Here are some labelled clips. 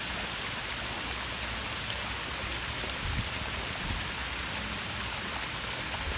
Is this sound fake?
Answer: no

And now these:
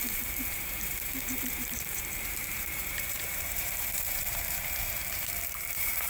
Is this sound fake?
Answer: yes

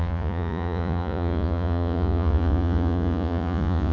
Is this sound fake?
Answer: yes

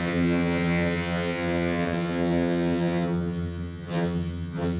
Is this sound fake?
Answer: yes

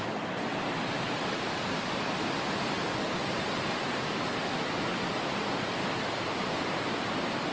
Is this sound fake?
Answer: no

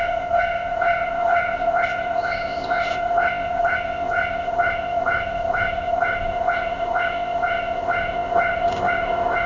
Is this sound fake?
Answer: yes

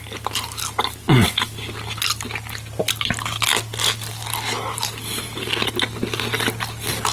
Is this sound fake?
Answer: no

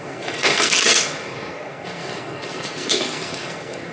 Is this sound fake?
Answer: yes